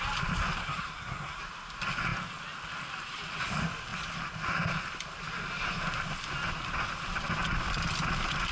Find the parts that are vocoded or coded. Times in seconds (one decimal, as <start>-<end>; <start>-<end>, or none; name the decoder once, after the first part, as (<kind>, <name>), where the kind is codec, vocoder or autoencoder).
0.6-1.4 (codec, SNAC)